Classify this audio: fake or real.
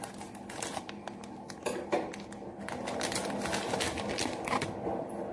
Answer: real